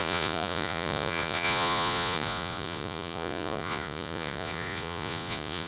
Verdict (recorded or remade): remade